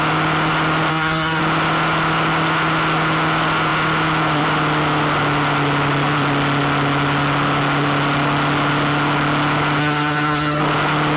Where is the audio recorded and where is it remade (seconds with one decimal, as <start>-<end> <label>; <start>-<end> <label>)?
0.0-0.9 recorded; 0.9-1.4 remade; 1.4-9.8 recorded; 9.8-10.6 remade; 10.6-11.2 recorded